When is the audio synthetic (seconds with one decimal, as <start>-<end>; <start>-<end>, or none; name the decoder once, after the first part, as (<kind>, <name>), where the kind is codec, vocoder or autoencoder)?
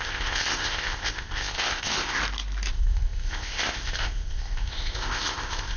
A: 0.0-2.2 (codec, ZipCodec); 2.7-5.8